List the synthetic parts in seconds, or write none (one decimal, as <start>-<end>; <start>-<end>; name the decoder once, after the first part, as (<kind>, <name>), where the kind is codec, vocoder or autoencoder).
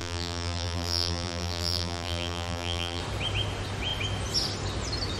0.0-3.0 (vocoder, BigVGAN v2)